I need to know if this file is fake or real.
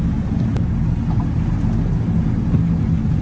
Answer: real